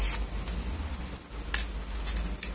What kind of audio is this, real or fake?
real